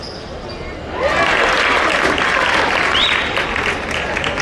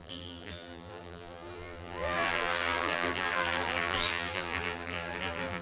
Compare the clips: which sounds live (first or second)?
first